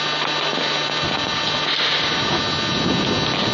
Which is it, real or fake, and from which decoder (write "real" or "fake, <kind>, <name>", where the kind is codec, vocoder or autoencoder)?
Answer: real